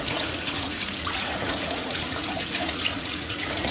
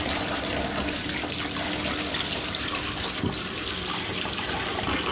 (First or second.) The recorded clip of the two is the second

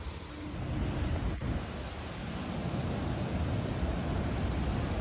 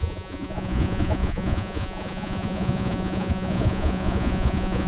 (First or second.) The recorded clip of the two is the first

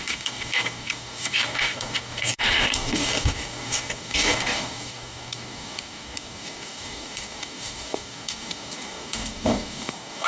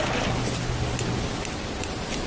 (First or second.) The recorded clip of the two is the second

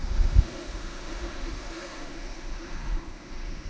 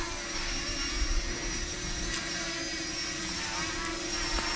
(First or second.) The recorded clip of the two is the second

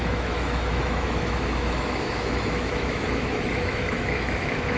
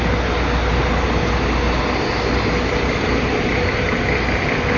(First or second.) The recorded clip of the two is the second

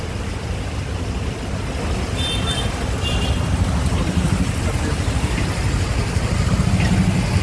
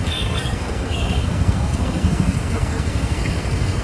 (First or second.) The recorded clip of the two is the first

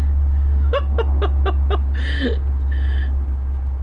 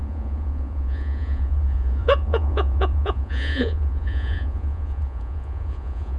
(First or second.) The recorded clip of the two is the first